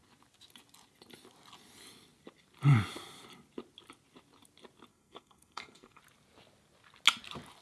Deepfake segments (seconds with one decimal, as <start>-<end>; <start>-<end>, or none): 4.9-6.0